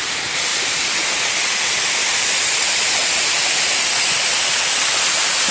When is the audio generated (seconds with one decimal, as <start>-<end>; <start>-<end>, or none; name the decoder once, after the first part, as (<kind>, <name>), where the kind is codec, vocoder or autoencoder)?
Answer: none